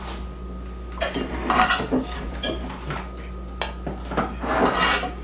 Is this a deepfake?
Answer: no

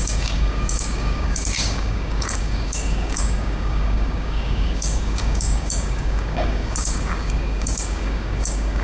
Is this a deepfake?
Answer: yes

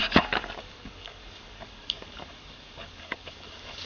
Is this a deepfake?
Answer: yes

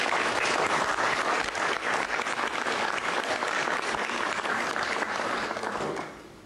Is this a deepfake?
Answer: yes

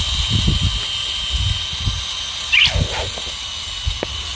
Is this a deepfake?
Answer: no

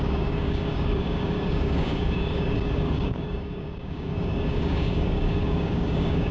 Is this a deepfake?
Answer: yes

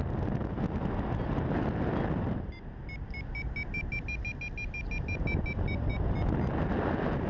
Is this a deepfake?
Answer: no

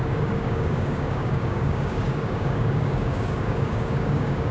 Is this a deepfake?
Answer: yes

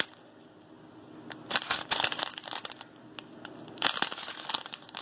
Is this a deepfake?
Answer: no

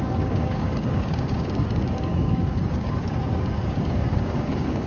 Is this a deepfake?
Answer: yes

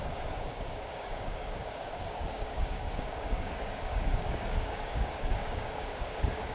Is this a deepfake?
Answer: yes